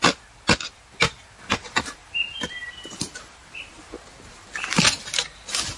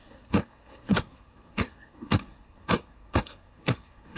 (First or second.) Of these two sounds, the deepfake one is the second